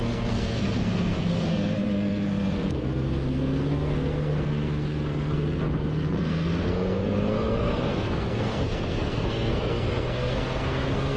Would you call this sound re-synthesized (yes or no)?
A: yes